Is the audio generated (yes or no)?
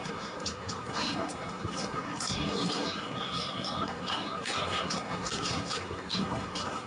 yes